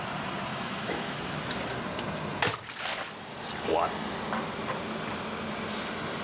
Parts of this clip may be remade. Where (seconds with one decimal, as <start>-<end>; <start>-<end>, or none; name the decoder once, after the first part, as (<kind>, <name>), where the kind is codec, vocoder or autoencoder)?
0.5-1.2 (autoencoder, DAC-VAE)